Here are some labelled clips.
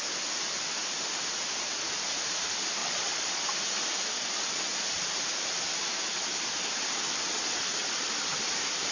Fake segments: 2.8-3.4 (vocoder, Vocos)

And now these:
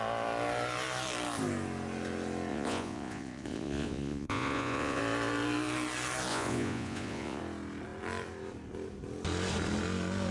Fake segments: 2.5-5.0 (vocoder, Vocos); 6.3-7.4

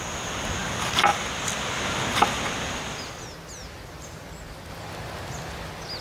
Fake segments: none

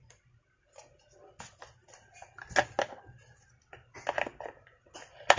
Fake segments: none